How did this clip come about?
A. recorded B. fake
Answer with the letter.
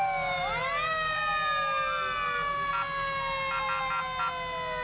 A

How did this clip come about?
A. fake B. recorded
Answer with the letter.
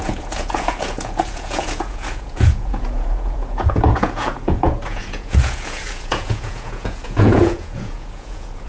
A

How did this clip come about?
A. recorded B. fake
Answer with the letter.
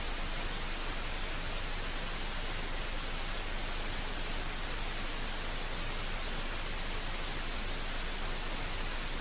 A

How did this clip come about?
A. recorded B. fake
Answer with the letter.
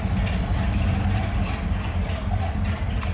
A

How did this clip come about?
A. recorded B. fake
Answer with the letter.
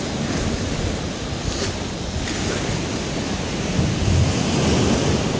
A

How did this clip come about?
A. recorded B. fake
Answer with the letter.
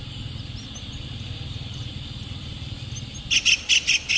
A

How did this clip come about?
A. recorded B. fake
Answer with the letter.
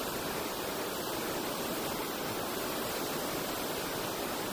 A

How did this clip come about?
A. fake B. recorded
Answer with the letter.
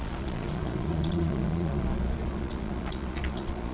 A